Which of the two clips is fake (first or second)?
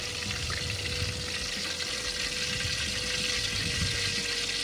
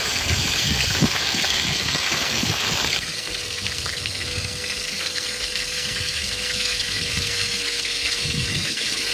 second